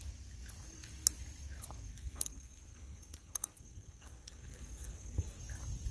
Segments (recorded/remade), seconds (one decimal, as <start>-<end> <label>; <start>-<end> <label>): 0.0-1.9 recorded; 1.9-5.4 remade; 5.4-5.9 recorded